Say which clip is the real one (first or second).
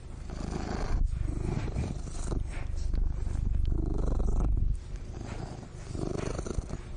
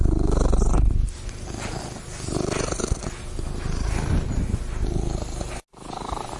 second